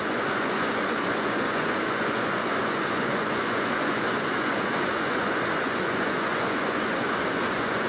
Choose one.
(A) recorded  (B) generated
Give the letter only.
B